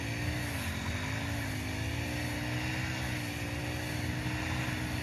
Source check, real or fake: real